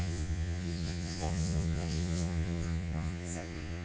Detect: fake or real fake